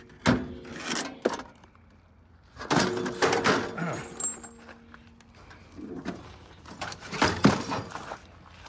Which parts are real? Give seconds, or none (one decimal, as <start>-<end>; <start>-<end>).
0.0-6.4; 7.9-8.7